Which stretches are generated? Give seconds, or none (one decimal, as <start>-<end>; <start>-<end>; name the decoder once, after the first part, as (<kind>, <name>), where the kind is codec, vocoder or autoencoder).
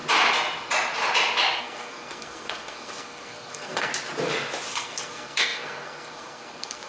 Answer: 1.6-3.9 (codec, SNAC); 4.7-6.9